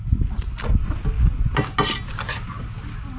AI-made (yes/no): no